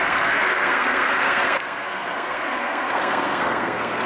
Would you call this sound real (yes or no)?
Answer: no